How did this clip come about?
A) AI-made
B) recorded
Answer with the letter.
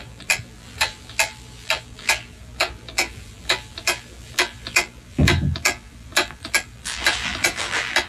A